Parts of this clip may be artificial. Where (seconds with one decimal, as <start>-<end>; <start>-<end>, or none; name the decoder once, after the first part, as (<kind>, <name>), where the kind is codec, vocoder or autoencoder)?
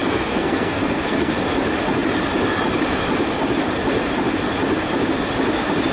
0.0-1.3 (codec, SNAC)